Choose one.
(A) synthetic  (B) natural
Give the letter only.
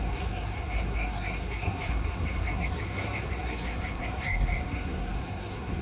A